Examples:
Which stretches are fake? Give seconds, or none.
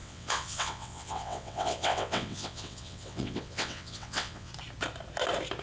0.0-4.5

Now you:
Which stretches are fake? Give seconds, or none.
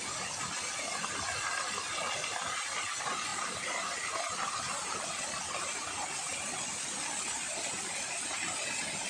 none